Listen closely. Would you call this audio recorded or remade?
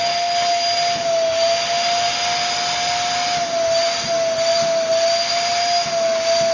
recorded